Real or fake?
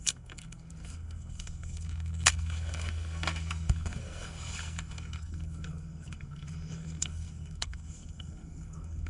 fake